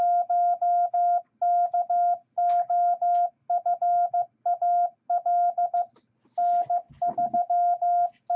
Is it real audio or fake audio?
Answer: real